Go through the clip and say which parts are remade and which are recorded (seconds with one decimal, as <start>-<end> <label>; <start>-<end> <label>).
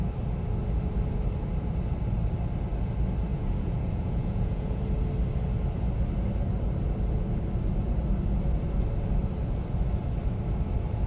0.0-3.3 recorded; 3.3-4.8 remade; 4.8-11.1 recorded